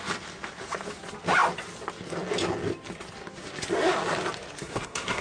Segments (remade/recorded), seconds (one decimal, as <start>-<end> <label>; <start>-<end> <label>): 0.0-4.6 recorded; 4.6-5.2 remade